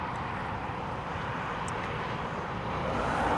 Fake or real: fake